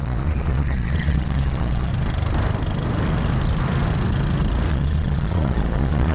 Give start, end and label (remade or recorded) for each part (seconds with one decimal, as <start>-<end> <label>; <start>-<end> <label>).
0.0-1.9 remade; 1.9-4.7 recorded; 4.7-6.1 remade